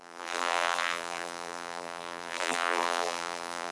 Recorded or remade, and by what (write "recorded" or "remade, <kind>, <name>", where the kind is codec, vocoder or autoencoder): remade, vocoder, BigVGAN v2